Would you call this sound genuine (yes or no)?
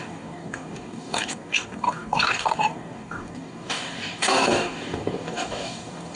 no